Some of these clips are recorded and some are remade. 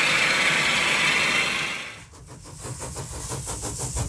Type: recorded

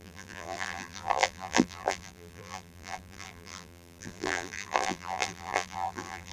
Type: remade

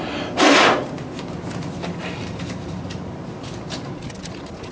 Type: recorded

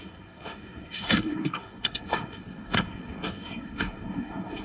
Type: remade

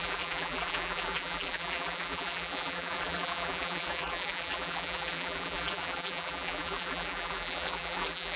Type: remade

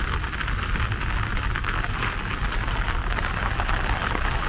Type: recorded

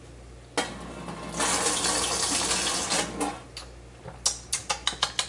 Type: recorded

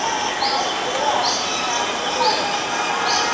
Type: recorded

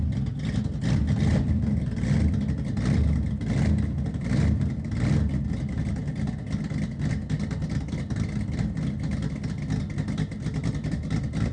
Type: recorded